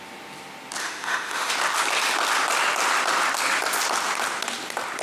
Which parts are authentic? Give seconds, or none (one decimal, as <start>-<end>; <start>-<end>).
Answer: 0.0-0.8; 1.5-5.0